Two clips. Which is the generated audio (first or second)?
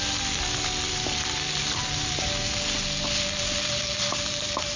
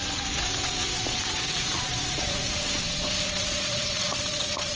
second